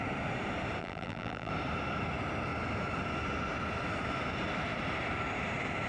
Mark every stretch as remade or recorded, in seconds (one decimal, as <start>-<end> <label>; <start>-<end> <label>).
0.0-0.8 recorded; 0.8-1.5 remade; 1.5-5.9 recorded